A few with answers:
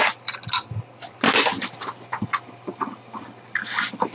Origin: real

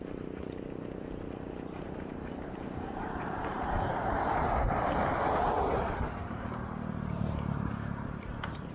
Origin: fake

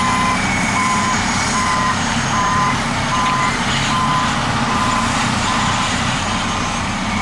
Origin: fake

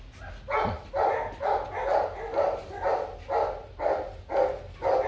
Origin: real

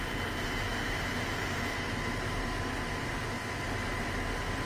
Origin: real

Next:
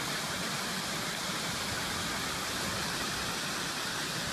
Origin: real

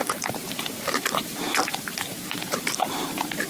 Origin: fake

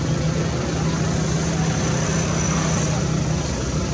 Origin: real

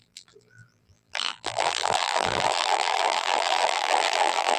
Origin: fake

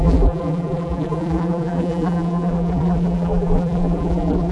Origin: fake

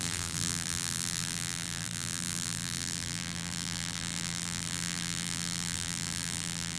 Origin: fake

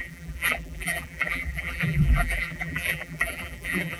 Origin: fake